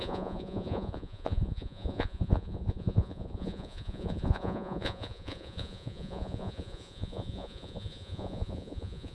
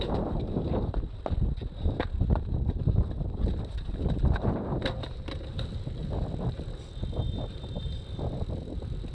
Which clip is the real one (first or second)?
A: second